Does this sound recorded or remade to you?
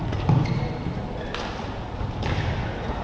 recorded